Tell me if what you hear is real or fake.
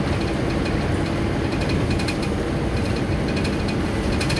real